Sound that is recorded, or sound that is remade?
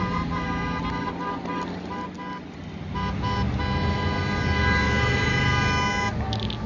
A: recorded